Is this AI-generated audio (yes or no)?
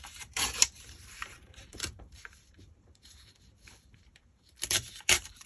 yes